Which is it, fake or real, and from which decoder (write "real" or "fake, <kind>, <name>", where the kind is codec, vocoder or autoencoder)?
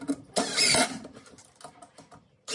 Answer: real